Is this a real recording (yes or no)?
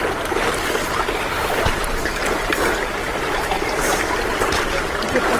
yes